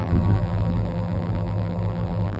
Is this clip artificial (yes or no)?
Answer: yes